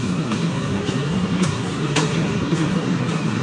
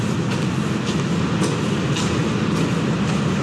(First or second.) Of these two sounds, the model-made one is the first